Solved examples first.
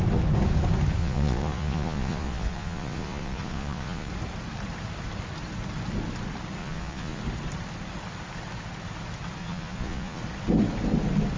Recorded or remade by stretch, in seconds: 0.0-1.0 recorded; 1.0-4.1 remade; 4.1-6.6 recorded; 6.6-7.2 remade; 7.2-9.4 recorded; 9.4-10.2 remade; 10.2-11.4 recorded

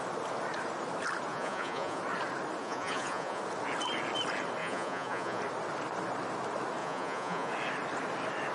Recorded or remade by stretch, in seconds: 0.0-1.3 recorded; 1.3-2.0 remade; 2.0-2.6 recorded; 2.6-3.4 remade; 3.4-4.6 recorded; 4.6-5.4 remade; 5.4-6.8 recorded; 6.8-7.5 remade; 7.5-8.5 recorded